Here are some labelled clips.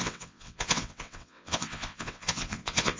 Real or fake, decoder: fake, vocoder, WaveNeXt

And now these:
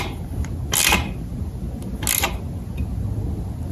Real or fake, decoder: real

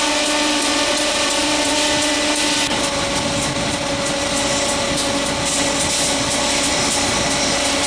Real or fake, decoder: real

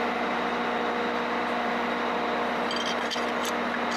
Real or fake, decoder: real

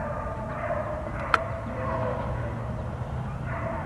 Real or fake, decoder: real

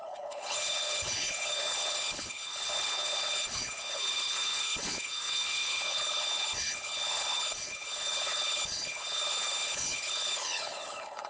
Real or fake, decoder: fake, codec, HILCodec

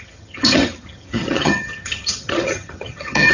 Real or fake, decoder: fake, vocoder, HiFi-GAN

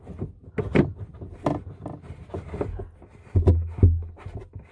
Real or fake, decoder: real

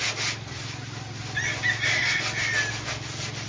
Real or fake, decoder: real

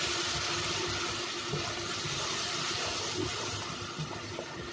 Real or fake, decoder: fake, vocoder, BigVGAN v2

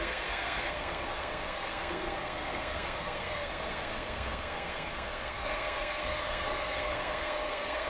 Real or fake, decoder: fake, codec, SNAC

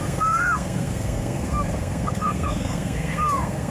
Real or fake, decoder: fake, codec, SNAC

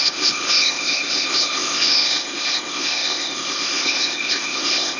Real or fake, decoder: fake, codec, ZipCodec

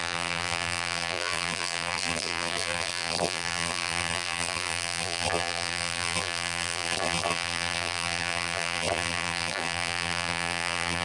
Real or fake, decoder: fake, vocoder, BigVGAN v2